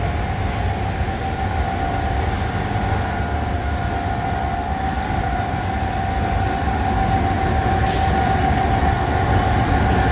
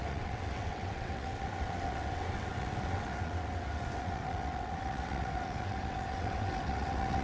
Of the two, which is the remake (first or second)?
second